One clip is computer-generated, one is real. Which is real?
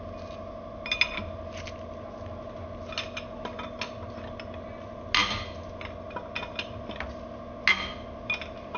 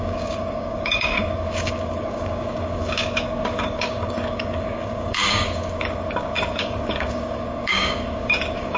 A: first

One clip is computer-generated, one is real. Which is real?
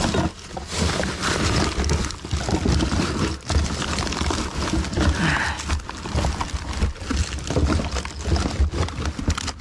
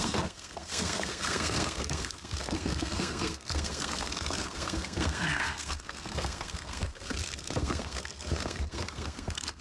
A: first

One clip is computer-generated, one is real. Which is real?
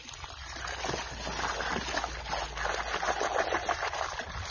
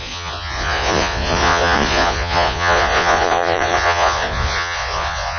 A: first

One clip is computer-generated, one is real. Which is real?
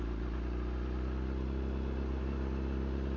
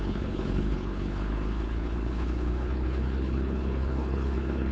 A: first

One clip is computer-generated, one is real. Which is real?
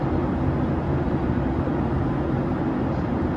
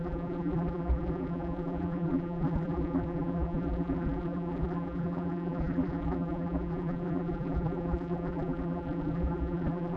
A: first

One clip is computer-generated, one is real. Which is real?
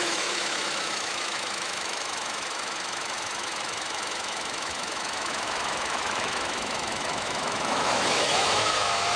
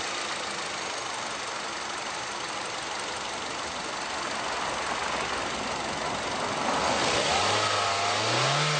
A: second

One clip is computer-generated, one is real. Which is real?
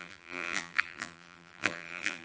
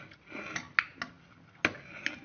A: second